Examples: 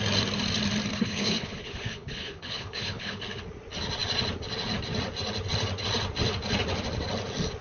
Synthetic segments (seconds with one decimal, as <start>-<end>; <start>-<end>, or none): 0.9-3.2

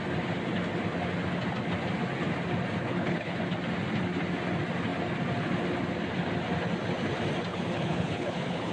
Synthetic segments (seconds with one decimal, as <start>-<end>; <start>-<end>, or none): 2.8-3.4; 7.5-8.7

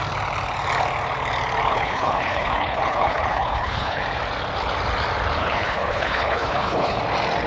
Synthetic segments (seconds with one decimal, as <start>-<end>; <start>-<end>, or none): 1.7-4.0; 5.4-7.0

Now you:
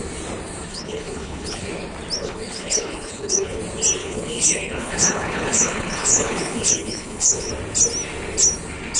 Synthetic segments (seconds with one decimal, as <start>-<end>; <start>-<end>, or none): 0.7-1.7; 2.2-3.6; 4.0-7.5